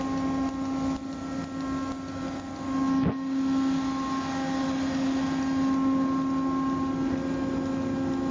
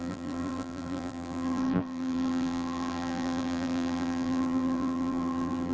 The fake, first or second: second